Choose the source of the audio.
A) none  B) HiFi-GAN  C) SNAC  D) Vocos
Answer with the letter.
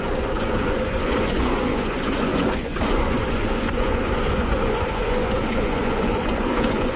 D